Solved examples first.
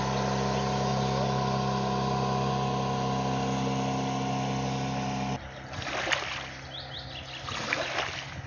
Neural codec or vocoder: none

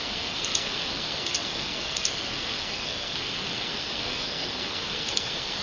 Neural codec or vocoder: codec, SNAC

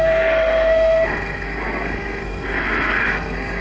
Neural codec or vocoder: codec, SNAC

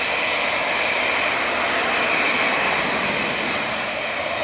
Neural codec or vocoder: none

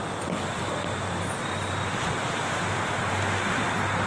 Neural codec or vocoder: none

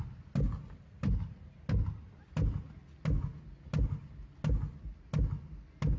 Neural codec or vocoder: none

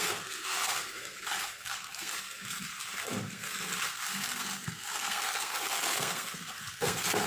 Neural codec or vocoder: codec, SNAC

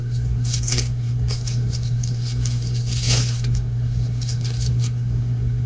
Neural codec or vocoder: codec, SNAC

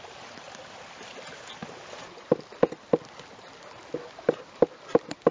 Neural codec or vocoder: none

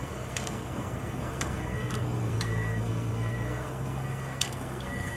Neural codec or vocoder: codec, SNAC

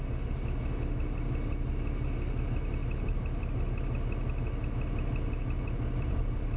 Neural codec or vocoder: none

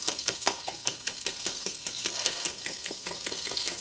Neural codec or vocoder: codec, SNAC